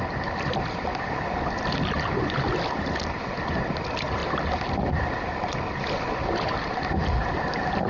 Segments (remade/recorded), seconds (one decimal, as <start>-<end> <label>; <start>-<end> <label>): 0.0-7.9 recorded